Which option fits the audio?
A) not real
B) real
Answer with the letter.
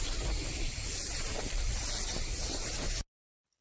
B